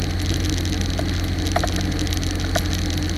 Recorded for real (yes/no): yes